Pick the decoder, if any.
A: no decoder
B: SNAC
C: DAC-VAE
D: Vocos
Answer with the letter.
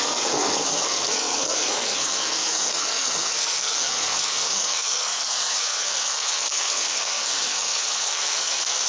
B